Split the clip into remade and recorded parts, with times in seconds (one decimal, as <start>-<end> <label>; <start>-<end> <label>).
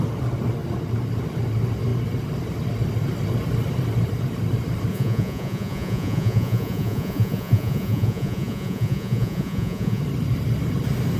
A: 0.0-4.9 recorded; 4.9-10.0 remade; 10.0-11.2 recorded